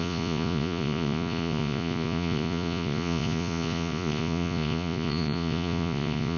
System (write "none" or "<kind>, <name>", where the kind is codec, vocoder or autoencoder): vocoder, Vocos